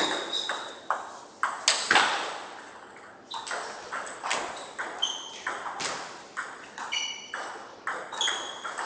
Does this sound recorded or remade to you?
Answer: recorded